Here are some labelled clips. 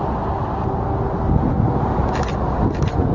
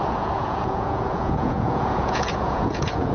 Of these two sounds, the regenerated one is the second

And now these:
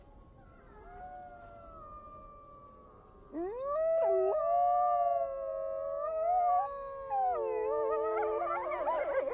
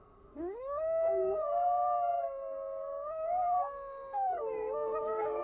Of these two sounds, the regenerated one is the second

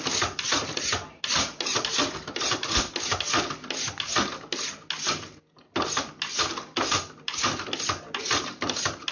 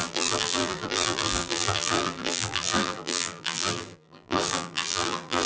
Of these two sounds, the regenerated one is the second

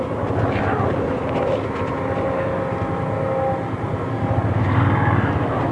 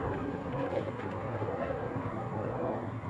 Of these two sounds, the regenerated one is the second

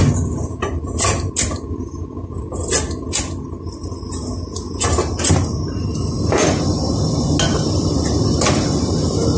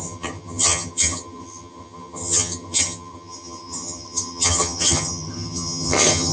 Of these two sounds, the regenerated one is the second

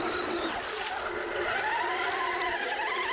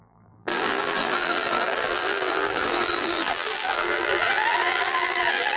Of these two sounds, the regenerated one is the second